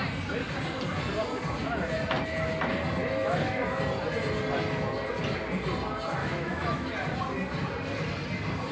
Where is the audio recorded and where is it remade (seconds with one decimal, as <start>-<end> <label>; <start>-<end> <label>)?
0.0-3.0 recorded; 3.0-3.8 remade; 3.8-6.2 recorded; 6.2-6.9 remade; 6.9-8.7 recorded